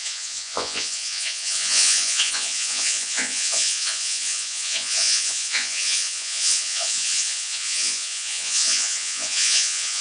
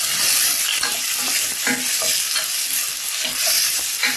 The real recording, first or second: second